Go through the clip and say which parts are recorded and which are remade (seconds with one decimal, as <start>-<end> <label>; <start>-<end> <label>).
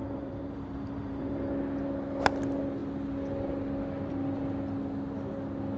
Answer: 0.0-1.5 remade; 1.5-5.8 recorded